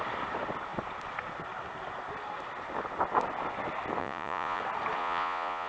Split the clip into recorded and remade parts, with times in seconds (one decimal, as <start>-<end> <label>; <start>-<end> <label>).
0.0-4.0 recorded; 4.0-4.6 remade; 4.6-5.0 recorded; 5.0-5.7 remade